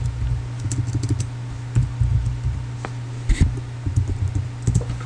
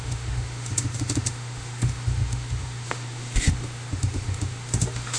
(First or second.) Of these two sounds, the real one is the first